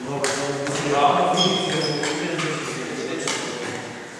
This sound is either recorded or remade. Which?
recorded